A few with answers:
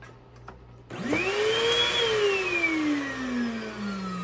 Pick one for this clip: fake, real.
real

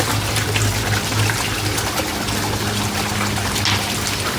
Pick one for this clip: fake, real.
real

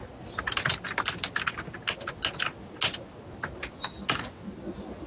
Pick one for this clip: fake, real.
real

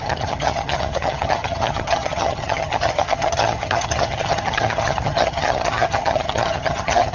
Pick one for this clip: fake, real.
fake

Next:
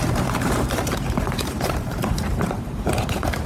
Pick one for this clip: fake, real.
fake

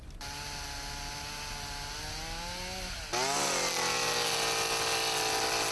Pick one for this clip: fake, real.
real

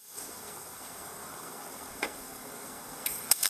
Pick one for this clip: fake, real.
fake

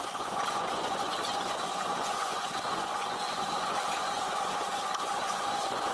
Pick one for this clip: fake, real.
fake